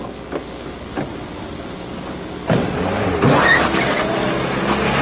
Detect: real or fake real